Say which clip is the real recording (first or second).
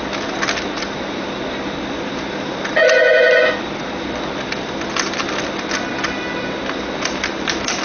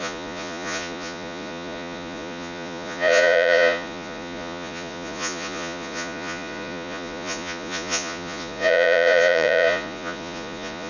first